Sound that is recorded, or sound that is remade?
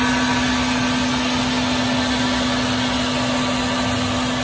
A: recorded